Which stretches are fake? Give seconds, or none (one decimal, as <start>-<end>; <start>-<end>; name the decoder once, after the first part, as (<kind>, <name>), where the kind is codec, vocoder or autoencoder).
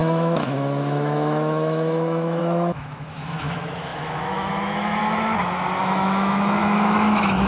0.0-5.0 (autoencoder, DAC-VAE); 5.8-7.5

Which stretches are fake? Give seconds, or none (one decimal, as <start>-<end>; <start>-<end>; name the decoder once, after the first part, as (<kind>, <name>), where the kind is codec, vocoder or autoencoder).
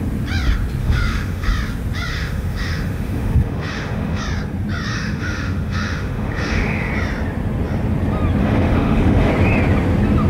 0.8-1.5 (autoencoder, DAC-VAE); 2.1-4.2; 4.9-6.9; 8.4-9.3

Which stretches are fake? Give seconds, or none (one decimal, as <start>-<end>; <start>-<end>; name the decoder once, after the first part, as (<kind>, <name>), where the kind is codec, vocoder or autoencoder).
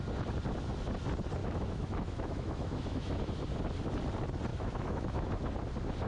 1.4-3.2 (autoencoder, DAC-VAE); 4.5-5.3